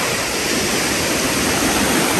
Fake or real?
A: real